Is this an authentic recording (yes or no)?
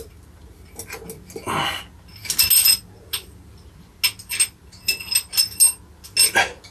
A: yes